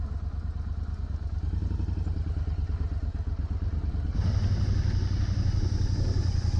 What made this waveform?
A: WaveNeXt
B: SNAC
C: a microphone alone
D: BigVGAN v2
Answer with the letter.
C